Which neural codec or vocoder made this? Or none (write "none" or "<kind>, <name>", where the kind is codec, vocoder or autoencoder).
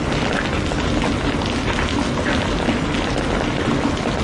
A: none